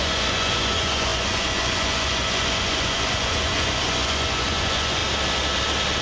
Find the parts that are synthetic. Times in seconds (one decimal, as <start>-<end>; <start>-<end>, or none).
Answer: 0.0-5.0